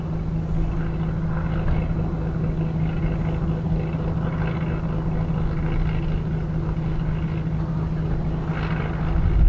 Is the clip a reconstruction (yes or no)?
no